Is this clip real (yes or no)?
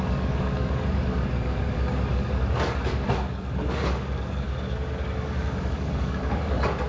no